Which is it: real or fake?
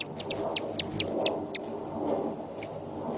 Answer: real